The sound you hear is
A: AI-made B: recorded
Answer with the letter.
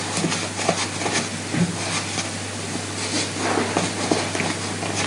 B